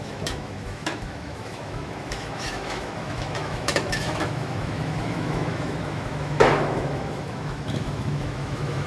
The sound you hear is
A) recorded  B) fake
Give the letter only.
B